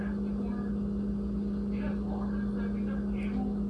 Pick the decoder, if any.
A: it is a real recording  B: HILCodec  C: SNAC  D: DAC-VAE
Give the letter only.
A